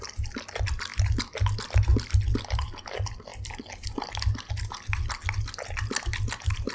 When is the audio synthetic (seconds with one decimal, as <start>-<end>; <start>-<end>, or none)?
none